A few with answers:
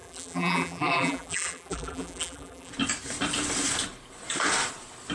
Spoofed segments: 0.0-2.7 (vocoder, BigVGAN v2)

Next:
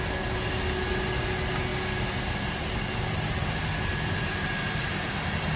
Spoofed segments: none